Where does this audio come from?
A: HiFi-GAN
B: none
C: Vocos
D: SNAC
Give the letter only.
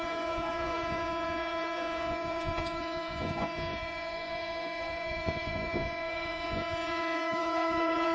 C